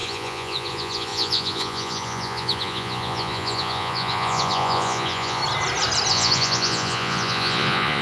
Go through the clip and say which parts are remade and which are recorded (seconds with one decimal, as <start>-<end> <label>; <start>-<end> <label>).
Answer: 0.0-5.4 remade; 5.4-6.1 recorded; 6.1-8.0 remade

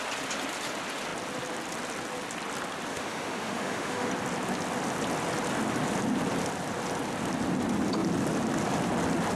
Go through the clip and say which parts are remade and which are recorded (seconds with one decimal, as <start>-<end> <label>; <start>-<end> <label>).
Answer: 0.0-2.9 recorded; 2.9-4.1 remade; 4.1-9.4 recorded

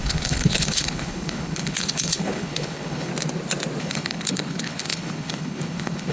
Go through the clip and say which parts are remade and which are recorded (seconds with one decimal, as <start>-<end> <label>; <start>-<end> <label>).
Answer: 0.0-3.1 remade; 3.1-3.8 recorded; 3.8-6.1 remade

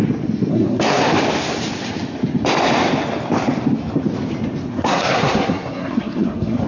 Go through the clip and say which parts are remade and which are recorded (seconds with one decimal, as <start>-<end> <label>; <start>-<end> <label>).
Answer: 0.0-0.5 recorded; 0.5-1.0 remade; 1.0-4.7 recorded; 4.7-6.7 remade